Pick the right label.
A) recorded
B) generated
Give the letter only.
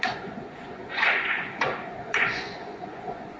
B